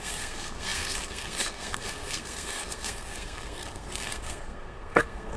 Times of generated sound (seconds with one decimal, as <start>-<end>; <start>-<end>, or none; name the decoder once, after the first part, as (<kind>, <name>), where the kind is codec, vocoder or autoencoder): 0.0-5.4 (codec, SNAC)